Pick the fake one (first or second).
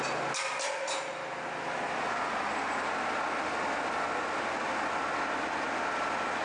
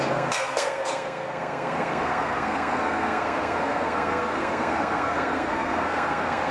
second